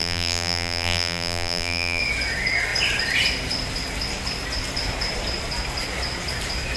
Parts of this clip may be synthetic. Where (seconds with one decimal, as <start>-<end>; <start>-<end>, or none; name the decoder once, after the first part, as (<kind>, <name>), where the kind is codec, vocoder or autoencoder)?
0.0-2.0 (vocoder, BigVGAN v2)